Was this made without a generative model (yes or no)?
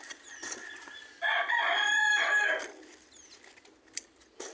yes